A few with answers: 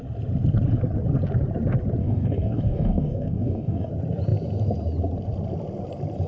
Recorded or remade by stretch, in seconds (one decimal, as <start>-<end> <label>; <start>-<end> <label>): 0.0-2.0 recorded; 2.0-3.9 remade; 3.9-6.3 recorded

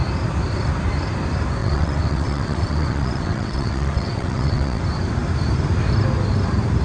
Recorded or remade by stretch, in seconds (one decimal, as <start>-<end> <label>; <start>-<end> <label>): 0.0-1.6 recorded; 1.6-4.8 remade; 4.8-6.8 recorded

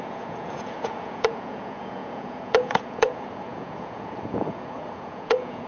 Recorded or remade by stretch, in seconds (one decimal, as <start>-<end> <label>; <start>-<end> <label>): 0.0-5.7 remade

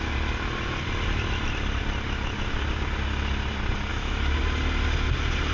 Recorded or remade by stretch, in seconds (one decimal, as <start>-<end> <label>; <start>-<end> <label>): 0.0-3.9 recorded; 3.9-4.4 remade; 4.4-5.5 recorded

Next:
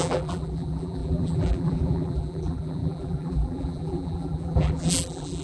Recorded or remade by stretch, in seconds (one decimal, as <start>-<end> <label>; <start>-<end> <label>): 0.0-5.4 remade

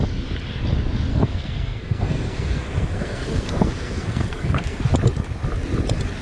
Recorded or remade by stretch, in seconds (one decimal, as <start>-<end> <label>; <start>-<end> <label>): 0.0-1.1 recorded; 1.1-4.8 remade; 4.8-6.2 recorded

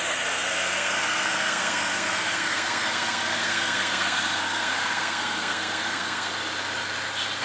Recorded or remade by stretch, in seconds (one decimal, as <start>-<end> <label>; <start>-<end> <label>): 0.0-6.3 remade; 6.3-7.4 recorded

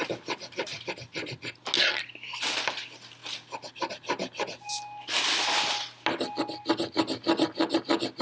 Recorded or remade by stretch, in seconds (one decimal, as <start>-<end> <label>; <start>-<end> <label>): 0.0-8.2 recorded